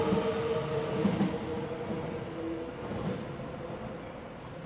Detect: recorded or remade recorded